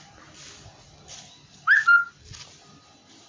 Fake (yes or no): no